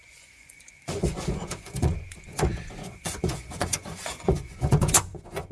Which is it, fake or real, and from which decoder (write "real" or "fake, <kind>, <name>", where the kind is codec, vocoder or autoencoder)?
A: fake, vocoder, Vocos